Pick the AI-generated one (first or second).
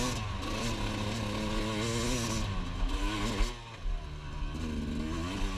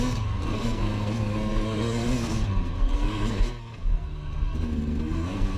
second